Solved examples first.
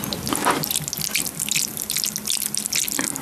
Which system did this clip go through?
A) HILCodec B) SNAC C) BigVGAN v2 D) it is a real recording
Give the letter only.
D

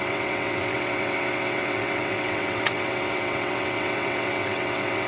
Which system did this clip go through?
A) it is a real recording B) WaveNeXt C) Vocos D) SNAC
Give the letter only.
B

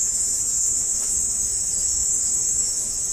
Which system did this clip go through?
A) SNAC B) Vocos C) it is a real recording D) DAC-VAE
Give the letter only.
D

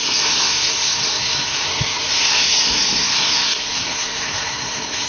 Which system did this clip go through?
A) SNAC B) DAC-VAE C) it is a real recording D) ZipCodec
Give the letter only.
A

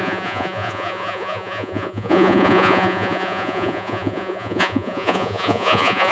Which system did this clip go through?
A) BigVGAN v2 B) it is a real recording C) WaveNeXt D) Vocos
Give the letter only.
D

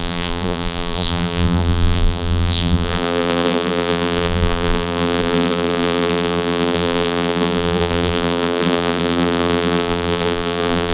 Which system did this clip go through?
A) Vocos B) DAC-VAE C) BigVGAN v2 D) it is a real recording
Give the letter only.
C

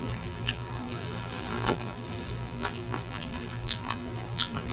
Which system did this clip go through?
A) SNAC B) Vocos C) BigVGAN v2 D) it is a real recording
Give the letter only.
C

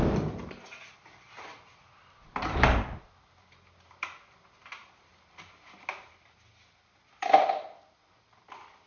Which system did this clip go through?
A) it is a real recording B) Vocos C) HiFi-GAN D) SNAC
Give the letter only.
A